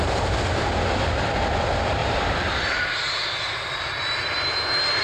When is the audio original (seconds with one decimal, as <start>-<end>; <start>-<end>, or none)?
0.0-5.0